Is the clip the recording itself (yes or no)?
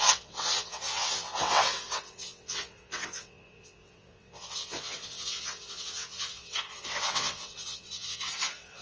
no